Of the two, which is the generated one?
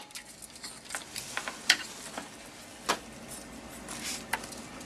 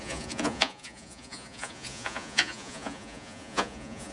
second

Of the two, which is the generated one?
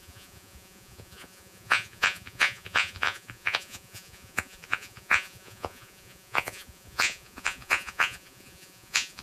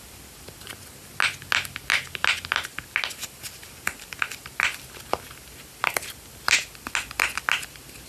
first